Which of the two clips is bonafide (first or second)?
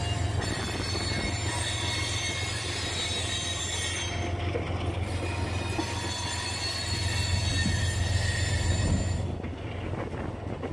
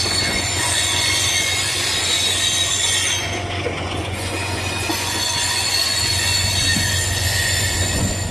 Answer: first